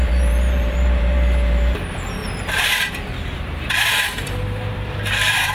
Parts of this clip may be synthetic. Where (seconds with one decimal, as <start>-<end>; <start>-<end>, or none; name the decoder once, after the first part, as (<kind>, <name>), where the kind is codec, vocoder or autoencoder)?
0.0-5.5 (vocoder, BigVGAN v2)